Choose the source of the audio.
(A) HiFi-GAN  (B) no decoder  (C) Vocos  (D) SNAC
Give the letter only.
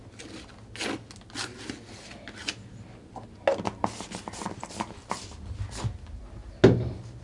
B